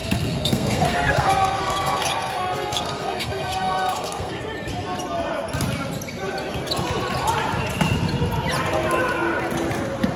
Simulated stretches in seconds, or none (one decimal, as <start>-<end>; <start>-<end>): 0.0-4.4